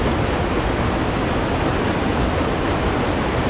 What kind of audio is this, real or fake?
real